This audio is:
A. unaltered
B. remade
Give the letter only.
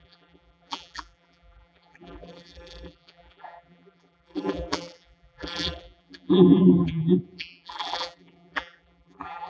B